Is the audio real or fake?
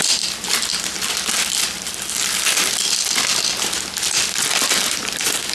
fake